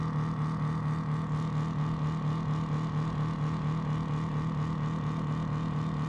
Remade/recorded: recorded